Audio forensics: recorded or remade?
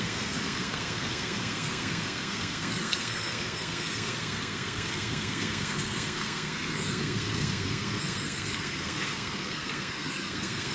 remade